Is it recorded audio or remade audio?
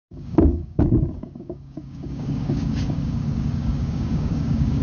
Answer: remade